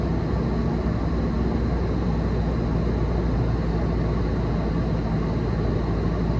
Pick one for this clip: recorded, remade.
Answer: recorded